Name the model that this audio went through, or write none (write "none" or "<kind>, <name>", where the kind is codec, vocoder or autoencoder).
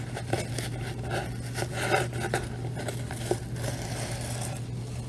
none